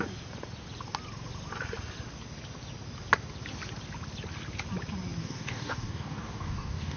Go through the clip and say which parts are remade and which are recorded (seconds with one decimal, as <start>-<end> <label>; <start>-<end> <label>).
0.0-5.2 recorded; 5.2-7.0 remade